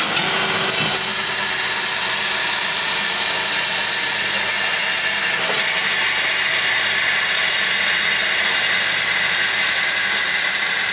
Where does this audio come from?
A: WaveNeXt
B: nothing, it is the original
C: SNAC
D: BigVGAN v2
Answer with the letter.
B